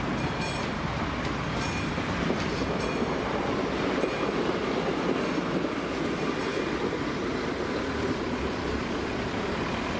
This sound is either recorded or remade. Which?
remade